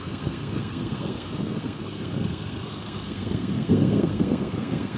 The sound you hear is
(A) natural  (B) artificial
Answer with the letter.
B